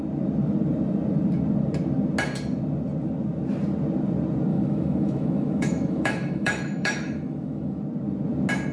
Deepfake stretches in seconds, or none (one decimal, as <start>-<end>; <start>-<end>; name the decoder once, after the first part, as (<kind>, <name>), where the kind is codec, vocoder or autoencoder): 4.5-7.8 (autoencoder, DAC-VAE)